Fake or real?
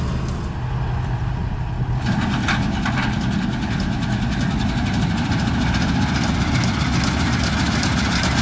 real